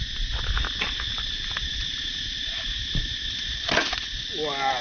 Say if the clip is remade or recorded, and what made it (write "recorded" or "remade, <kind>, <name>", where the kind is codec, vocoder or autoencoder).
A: recorded